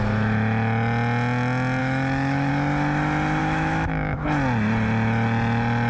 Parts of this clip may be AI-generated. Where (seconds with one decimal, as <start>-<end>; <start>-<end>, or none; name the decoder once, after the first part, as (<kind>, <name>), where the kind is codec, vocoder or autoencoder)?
1.8-2.5 (autoencoder, DAC-VAE); 3.4-4.2